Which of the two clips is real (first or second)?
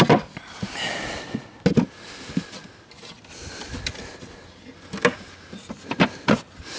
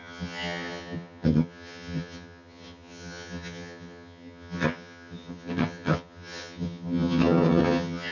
first